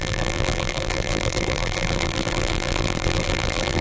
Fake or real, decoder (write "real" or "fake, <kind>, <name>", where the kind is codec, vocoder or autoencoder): fake, vocoder, BigVGAN v2